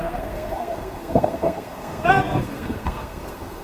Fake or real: fake